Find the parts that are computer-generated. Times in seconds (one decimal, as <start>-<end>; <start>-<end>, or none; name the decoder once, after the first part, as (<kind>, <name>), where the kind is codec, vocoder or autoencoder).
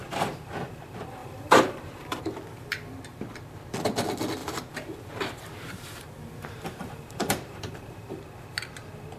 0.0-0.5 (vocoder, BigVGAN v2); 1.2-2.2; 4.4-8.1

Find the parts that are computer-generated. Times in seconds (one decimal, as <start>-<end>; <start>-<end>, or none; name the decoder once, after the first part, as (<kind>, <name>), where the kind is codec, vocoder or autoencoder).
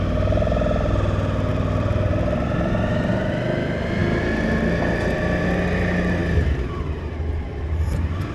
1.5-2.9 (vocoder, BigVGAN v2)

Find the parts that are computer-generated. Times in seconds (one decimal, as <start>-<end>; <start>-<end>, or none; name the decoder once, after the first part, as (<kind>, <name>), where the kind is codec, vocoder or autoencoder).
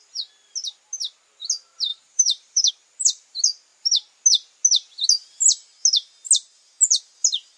1.9-2.7 (vocoder, BigVGAN v2)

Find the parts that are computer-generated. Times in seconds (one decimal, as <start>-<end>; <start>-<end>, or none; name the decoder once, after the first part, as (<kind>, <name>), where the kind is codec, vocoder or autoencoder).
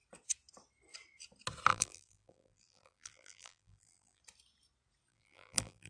1.7-4.2 (vocoder, BigVGAN v2); 5.1-5.9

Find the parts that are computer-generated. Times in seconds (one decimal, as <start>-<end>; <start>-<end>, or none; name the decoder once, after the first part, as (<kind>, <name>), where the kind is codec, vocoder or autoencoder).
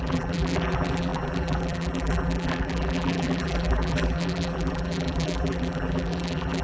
0.0-6.6 (vocoder, BigVGAN v2)